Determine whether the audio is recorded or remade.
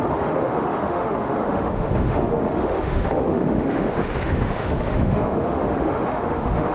remade